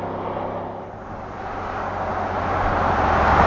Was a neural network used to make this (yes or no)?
no